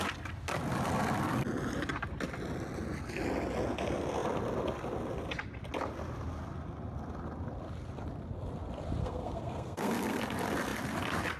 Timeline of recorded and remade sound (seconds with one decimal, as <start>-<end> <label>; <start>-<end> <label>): 0.0-9.0 recorded; 9.0-10.2 remade; 10.2-11.4 recorded